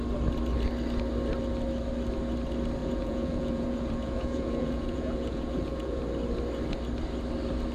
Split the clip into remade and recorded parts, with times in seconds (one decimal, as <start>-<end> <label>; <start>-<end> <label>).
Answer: 0.0-2.8 recorded; 2.8-6.0 remade; 6.0-7.7 recorded